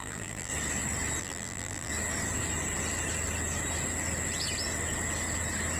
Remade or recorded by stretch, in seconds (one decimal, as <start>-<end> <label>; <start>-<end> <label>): 0.0-0.5 remade; 0.5-1.2 recorded; 1.2-1.9 remade; 1.9-5.8 recorded